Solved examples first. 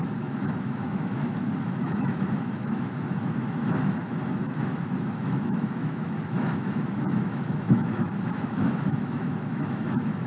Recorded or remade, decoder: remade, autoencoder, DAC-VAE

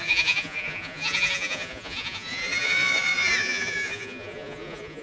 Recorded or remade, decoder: remade, vocoder, Vocos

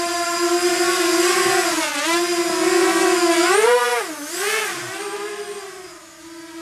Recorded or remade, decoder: recorded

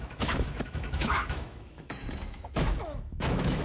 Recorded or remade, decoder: remade, autoencoder, DAC-VAE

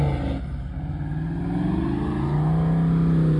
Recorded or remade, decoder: recorded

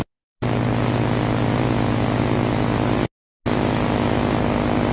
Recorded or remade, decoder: recorded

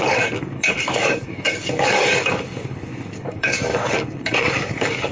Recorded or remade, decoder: remade, codec, DAC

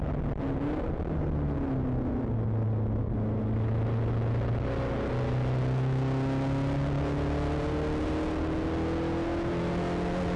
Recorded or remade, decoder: recorded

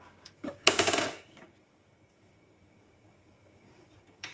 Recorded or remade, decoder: remade, codec, DAC